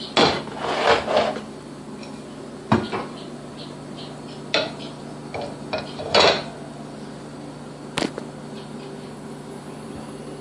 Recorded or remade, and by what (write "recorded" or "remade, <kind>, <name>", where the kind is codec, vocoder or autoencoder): recorded